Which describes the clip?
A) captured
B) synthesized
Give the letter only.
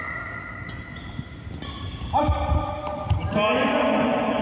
A